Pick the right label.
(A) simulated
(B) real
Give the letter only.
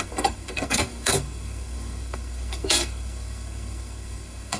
A